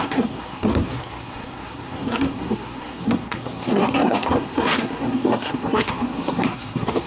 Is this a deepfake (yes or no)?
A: yes